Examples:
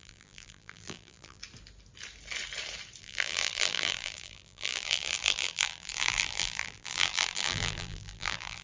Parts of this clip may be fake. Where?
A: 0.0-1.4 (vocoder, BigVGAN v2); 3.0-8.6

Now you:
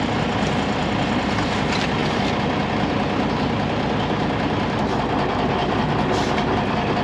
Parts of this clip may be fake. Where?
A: none

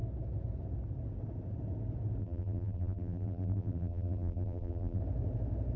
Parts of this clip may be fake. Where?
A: 2.2-5.0 (vocoder, BigVGAN v2)

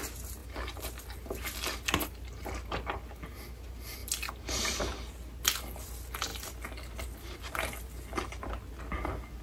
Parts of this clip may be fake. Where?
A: none

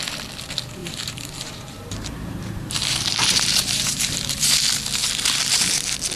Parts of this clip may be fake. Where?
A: 0.8-4.5 (vocoder, BigVGAN v2); 5.0-5.6

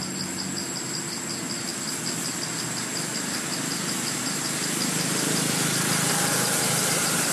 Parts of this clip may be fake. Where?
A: none

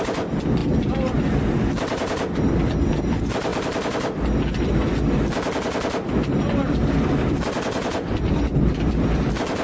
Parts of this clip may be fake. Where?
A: 0.0-9.6 (vocoder, BigVGAN v2)

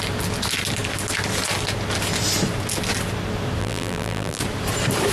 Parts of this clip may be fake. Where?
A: 3.6-4.4 (vocoder, BigVGAN v2)